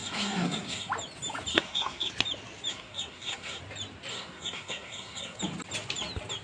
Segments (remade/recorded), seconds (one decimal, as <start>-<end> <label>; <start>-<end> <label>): 0.0-0.9 remade; 0.9-1.5 recorded; 1.5-2.1 remade; 2.1-2.7 recorded; 2.7-3.6 remade; 3.6-4.1 recorded; 4.1-5.4 remade; 5.4-6.4 recorded